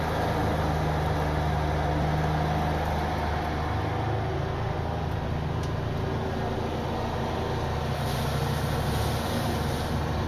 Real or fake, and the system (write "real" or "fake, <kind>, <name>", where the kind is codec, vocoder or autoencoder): real